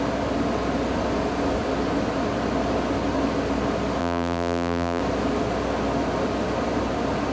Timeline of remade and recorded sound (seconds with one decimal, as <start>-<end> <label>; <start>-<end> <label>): 0.0-4.0 recorded; 4.0-5.0 remade; 5.0-7.3 recorded